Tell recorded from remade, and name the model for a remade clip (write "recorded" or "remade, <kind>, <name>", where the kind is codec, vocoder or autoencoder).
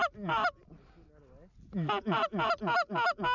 recorded